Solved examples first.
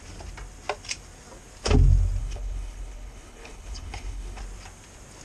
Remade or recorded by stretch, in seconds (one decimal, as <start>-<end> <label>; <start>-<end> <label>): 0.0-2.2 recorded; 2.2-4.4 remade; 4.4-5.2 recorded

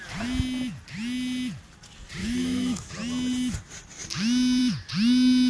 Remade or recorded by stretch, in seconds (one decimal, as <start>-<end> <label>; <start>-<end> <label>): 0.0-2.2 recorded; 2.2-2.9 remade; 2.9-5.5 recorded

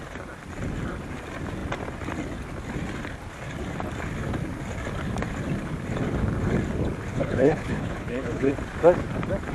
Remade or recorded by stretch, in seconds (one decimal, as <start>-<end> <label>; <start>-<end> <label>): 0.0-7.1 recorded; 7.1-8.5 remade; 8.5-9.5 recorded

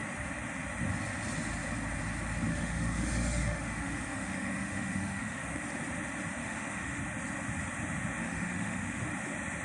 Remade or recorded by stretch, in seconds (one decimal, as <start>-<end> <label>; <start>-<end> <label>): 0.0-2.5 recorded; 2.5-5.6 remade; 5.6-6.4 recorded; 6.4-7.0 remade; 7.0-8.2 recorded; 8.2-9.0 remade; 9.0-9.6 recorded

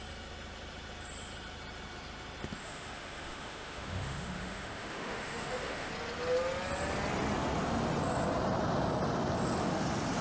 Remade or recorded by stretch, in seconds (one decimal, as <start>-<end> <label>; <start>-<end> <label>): 0.0-2.6 recorded; 2.6-5.9 remade; 5.9-10.2 recorded

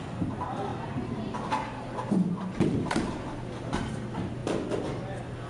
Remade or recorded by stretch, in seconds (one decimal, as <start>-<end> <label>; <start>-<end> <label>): 0.0-5.5 recorded